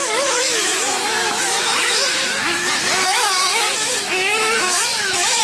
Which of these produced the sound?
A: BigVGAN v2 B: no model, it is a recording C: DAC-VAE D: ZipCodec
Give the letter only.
C